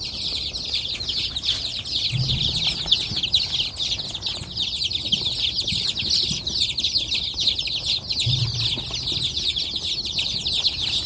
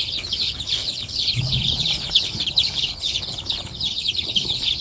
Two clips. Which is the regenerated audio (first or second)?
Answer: second